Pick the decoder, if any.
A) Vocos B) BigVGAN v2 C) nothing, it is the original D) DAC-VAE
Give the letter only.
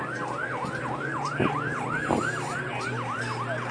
C